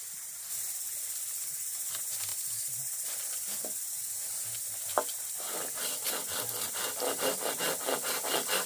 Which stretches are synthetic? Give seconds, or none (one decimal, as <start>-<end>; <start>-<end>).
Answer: none